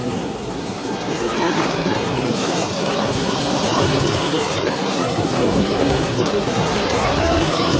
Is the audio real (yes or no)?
no